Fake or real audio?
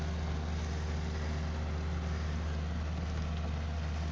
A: real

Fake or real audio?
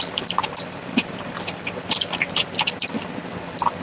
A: fake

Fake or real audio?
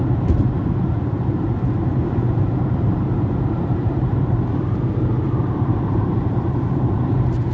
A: fake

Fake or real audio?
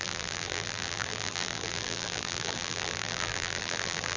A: fake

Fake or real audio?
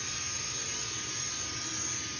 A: real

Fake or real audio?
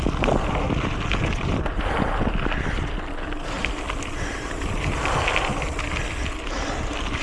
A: fake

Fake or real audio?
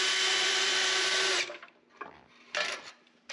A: fake